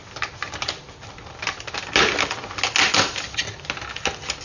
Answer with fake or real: real